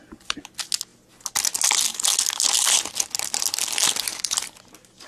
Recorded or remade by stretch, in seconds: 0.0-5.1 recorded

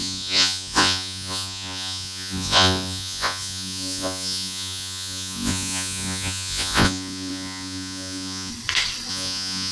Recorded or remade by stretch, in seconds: 0.0-8.5 remade; 8.5-9.1 recorded; 9.1-9.7 remade

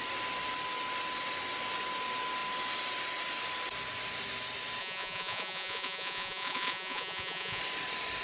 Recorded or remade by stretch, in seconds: 0.0-4.8 recorded; 4.8-7.6 remade; 7.6-8.2 recorded

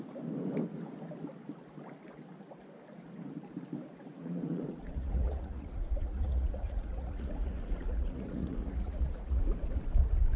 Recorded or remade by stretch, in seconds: 0.0-4.2 recorded; 4.2-9.4 remade; 9.4-10.4 recorded

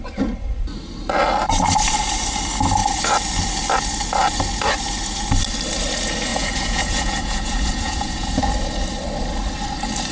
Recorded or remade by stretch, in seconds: 0.0-6.3 recorded; 6.3-8.4 remade; 8.4-10.1 recorded

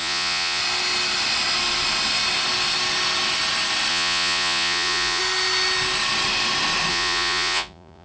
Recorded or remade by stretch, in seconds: 0.0-0.6 remade; 0.6-3.9 recorded; 3.9-5.2 remade; 5.2-6.9 recorded; 6.9-8.0 remade